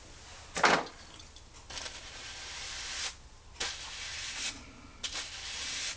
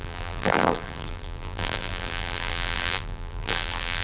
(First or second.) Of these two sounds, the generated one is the second